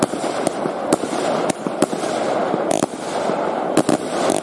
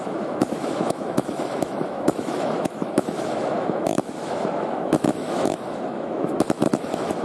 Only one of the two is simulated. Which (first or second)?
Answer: second